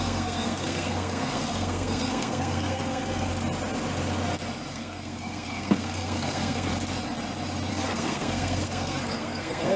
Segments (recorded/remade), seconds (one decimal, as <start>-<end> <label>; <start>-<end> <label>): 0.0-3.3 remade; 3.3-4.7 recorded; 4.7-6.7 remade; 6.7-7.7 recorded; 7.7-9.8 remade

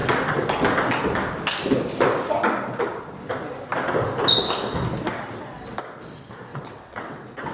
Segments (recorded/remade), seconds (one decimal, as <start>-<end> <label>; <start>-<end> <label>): 0.0-6.5 recorded; 6.5-7.5 remade

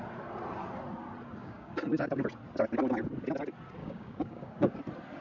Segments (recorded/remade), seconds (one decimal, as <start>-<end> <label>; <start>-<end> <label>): 0.0-1.4 recorded; 1.4-2.2 remade; 2.2-3.8 recorded; 3.8-4.8 remade; 4.8-5.2 recorded

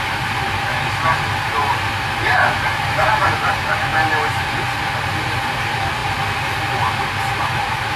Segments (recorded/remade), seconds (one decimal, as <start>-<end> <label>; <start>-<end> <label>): 0.0-8.0 recorded

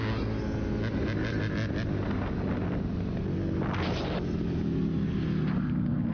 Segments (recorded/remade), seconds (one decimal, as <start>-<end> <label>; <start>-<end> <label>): 0.0-6.1 recorded